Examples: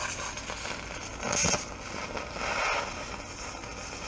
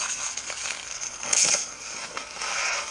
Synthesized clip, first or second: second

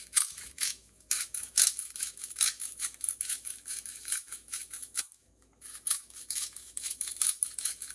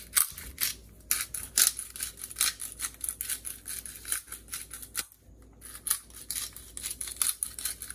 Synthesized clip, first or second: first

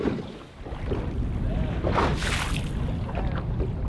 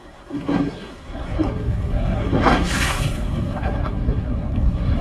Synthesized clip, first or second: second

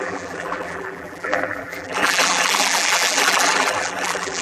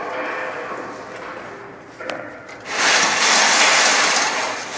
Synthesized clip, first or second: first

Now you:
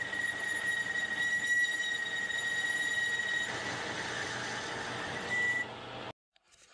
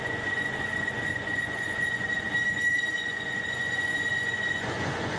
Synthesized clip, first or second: second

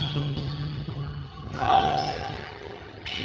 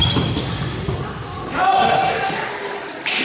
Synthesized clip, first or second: first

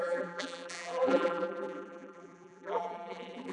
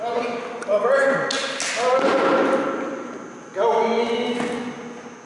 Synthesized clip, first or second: first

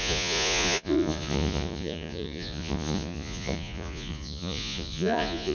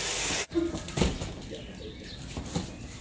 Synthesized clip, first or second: first